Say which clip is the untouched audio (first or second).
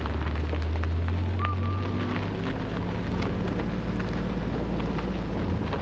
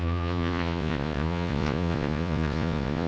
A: first